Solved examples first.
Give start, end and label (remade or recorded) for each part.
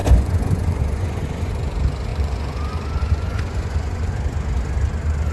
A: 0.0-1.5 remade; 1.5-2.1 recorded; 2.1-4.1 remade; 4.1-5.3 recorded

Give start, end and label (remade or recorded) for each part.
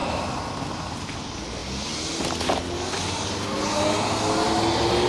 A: 0.0-5.1 recorded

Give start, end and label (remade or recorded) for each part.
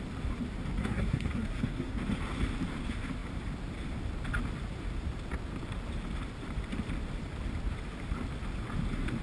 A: 0.0-0.8 recorded; 0.8-2.0 remade; 2.0-9.2 recorded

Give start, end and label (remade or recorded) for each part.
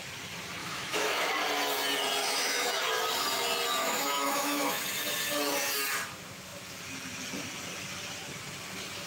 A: 0.0-0.6 recorded; 0.6-1.3 remade; 1.3-2.2 recorded; 2.2-2.8 remade; 2.8-3.8 recorded; 3.8-4.8 remade; 4.8-9.1 recorded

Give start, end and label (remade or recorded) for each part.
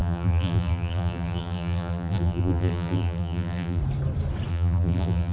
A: 0.0-3.8 remade; 3.8-4.5 recorded; 4.5-5.3 remade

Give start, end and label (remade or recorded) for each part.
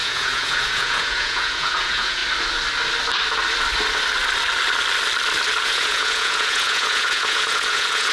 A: 0.0-2.2 remade; 2.2-5.6 recorded; 5.6-8.1 remade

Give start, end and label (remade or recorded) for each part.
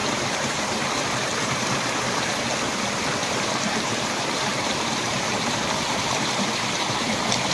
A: 0.0-2.4 remade; 2.4-3.2 recorded; 3.2-6.7 remade; 6.7-7.5 recorded